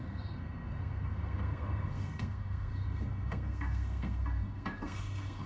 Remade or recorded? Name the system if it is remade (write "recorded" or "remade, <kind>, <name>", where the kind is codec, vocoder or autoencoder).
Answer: remade, codec, SNAC